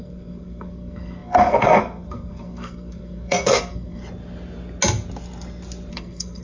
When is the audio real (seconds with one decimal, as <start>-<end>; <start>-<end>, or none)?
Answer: 4.0-5.9